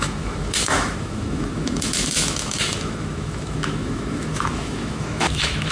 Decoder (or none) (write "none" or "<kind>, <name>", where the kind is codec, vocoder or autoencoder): autoencoder, DAC-VAE